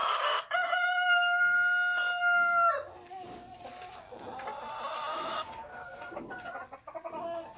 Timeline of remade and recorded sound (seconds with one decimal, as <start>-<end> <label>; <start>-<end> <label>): 0.0-2.7 remade; 2.7-5.1 recorded; 5.1-6.5 remade; 6.5-7.6 recorded

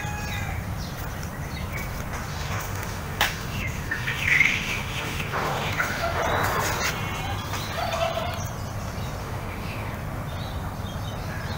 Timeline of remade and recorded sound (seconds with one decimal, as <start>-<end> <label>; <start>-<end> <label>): 0.0-2.3 recorded; 2.3-6.2 remade; 6.2-9.2 recorded; 9.2-9.9 remade; 9.9-11.6 recorded

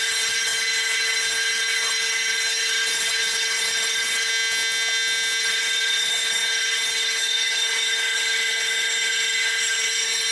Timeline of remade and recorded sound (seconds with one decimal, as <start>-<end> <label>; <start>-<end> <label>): 0.0-4.3 remade; 4.3-5.4 recorded; 5.4-10.3 remade

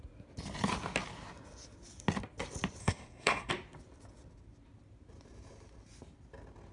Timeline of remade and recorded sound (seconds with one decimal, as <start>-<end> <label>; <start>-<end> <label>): 0.0-2.8 recorded; 2.8-3.5 remade; 3.5-6.7 recorded

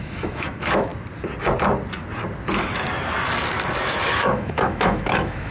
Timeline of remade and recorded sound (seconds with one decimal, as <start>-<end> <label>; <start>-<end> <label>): 0.0-0.9 remade; 0.9-4.2 recorded; 4.2-5.5 remade